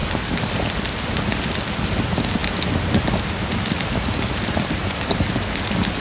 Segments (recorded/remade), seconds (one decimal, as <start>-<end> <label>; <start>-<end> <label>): 0.0-6.0 recorded